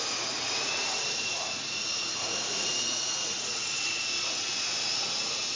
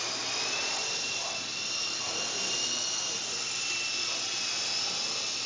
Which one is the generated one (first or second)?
first